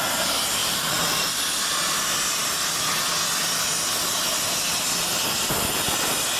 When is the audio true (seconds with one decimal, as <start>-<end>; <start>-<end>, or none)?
0.0-0.6; 1.3-6.4